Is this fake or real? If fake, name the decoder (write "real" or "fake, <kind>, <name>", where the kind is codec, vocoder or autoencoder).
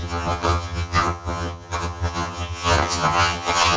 fake, vocoder, HiFi-GAN